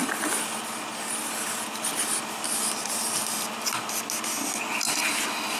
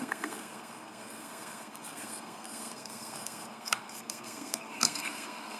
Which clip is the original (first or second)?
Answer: first